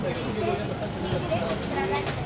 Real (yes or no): yes